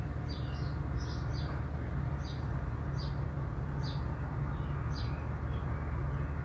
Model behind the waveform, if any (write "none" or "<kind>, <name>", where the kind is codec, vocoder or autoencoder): none